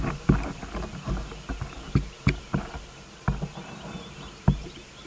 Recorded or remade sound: recorded